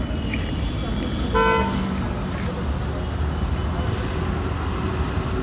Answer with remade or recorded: recorded